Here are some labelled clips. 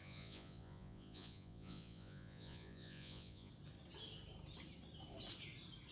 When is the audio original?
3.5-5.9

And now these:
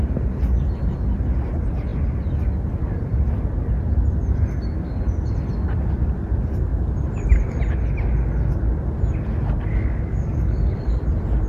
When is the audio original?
0.0-9.7; 11.0-11.5

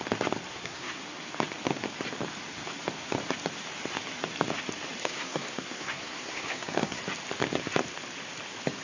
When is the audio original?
0.0-0.5; 1.0-5.0; 7.0-8.8

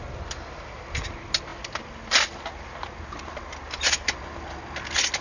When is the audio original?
0.0-5.2

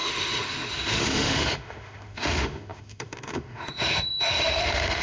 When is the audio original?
none